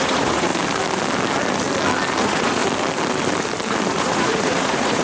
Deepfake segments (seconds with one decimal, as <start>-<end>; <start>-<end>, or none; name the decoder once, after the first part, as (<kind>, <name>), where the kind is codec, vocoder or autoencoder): 0.0-0.5 (vocoder, Vocos); 2.2-2.6; 3.9-5.0